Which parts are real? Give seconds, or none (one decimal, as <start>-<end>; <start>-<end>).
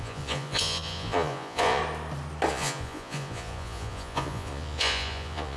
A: 1.8-2.5